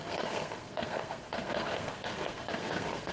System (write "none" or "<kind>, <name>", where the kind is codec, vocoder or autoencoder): codec, SNAC